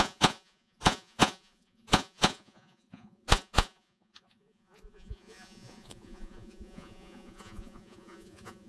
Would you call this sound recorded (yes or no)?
no